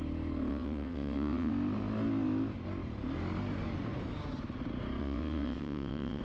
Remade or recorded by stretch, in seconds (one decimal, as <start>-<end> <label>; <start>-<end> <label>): 0.0-0.5 recorded; 0.5-1.5 remade; 1.5-5.0 recorded; 5.0-6.2 remade